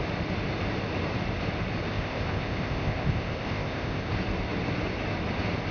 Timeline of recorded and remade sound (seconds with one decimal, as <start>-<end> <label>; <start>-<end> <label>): 0.0-1.9 recorded; 1.9-4.1 remade; 4.1-5.7 recorded